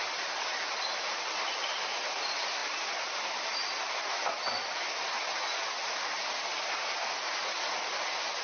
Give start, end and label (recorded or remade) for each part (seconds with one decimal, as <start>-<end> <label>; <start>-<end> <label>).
0.0-8.4 recorded